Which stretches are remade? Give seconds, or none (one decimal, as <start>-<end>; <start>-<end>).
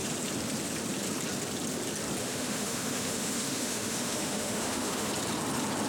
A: 2.2-5.1